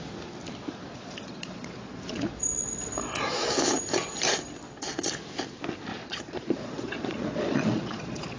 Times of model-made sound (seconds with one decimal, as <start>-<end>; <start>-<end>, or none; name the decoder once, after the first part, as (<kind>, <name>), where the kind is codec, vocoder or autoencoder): 0.9-3.5 (vocoder, Vocos); 5.9-8.4